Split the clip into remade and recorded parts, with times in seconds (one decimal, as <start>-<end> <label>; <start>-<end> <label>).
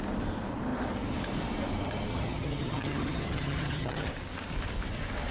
0.0-2.1 recorded; 2.1-4.1 remade; 4.1-5.3 recorded